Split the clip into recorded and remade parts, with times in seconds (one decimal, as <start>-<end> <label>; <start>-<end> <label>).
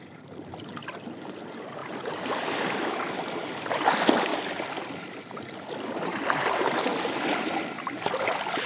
0.0-8.7 recorded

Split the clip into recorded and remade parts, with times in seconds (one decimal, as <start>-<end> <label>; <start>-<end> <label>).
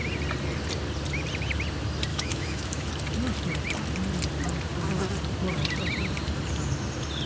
0.0-2.1 recorded; 2.1-2.9 remade; 2.9-7.3 recorded